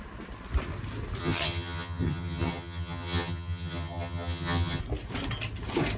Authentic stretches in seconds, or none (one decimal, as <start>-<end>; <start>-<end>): 0.0-1.2; 4.8-6.0